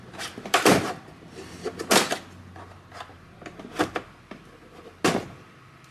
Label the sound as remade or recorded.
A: recorded